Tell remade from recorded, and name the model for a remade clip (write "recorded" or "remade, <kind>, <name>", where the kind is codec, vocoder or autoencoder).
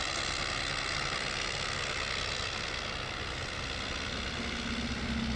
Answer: recorded